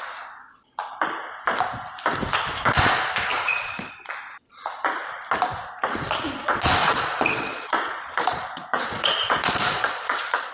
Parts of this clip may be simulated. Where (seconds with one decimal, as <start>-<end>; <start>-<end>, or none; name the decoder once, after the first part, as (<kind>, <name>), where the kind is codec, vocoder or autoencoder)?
3.3-3.9 (vocoder, Vocos); 6.8-10.5